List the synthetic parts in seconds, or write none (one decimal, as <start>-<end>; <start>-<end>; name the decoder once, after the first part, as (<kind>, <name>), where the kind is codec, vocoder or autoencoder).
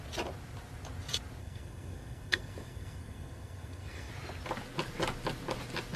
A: 1.4-4.1 (codec, SNAC)